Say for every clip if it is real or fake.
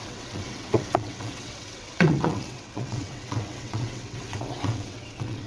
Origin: fake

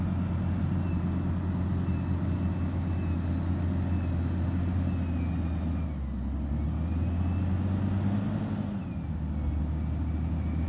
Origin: real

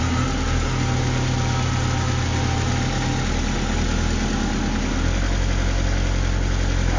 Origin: real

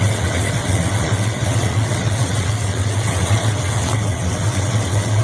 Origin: fake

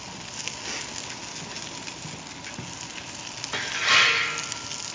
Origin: real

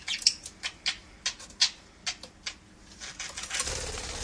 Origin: real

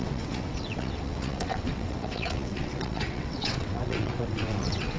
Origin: fake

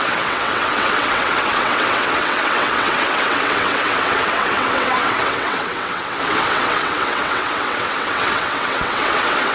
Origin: fake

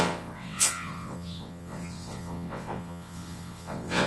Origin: fake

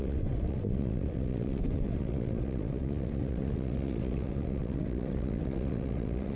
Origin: fake